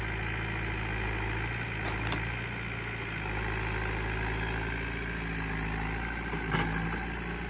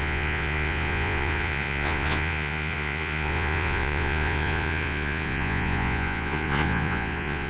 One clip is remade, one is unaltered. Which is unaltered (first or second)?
first